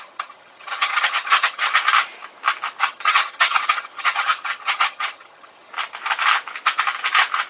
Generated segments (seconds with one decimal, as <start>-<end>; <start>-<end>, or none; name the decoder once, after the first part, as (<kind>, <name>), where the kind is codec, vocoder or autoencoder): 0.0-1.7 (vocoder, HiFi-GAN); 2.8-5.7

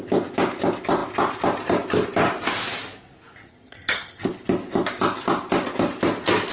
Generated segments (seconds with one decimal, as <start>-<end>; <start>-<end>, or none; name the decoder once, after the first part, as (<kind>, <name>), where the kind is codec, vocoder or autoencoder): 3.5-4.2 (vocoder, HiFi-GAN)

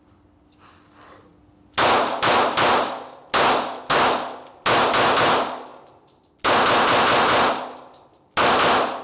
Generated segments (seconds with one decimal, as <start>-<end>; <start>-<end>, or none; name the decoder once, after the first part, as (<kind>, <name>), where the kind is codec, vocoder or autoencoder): none

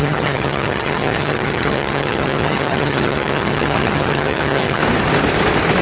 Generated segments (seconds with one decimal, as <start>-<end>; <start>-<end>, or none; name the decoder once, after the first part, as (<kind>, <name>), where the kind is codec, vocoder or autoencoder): 0.0-4.8 (vocoder, HiFi-GAN)